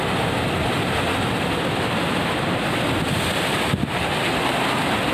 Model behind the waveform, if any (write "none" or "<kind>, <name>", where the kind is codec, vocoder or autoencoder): none